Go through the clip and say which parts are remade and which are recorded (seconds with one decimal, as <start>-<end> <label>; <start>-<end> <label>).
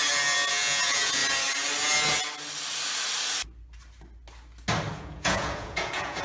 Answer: 0.0-0.5 recorded; 0.5-1.2 remade; 1.2-4.9 recorded; 4.9-6.2 remade